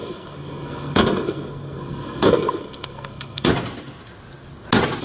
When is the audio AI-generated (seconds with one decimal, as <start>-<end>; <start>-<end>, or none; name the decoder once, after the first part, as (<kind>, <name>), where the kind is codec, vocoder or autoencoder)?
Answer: 0.0-3.5 (codec, SNAC)